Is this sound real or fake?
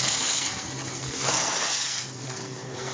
fake